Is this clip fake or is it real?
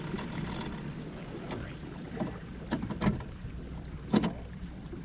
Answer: real